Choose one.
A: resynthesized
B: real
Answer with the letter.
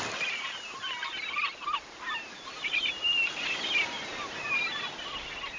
B